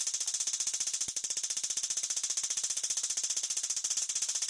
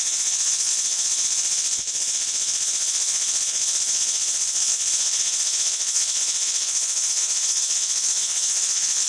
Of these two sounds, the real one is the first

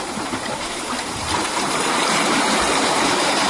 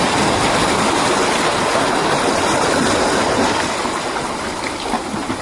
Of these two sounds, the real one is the second